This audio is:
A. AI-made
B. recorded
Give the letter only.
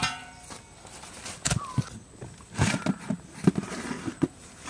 B